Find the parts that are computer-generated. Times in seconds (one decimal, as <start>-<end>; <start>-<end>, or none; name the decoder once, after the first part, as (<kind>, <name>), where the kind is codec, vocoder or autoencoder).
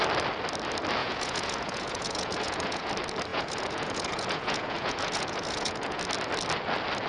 1.0-2.9 (vocoder, Vocos); 3.3-6.0